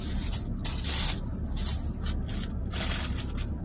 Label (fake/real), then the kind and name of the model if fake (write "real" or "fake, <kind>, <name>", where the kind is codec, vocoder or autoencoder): real